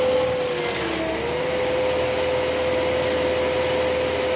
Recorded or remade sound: recorded